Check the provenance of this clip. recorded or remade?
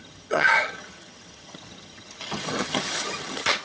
remade